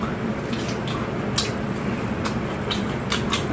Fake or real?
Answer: real